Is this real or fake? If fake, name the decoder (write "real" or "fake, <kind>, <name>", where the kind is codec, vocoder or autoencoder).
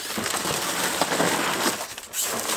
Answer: real